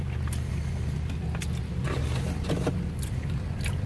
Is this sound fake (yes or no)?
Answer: no